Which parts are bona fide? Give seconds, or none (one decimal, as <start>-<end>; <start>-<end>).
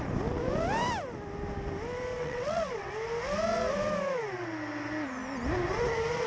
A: 0.0-2.2; 2.9-6.3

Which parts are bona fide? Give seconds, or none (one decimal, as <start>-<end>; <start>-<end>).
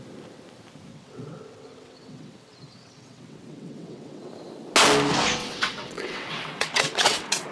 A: 0.0-0.9; 4.3-5.4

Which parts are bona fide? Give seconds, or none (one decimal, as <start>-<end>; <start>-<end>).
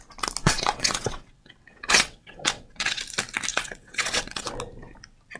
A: 0.0-0.4; 3.0-3.5; 4.5-5.4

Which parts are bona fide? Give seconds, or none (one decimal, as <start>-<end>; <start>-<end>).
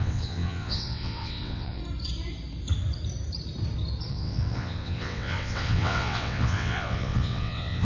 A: 1.8-4.1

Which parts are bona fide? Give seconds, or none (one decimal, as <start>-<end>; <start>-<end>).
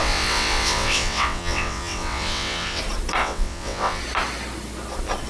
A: 2.8-3.2; 4.0-5.3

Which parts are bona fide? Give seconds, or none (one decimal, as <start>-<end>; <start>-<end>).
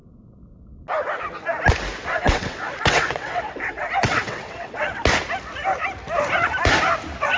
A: 0.0-2.1; 5.0-7.4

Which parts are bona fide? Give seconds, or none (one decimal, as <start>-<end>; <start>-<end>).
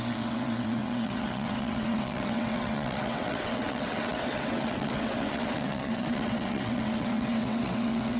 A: none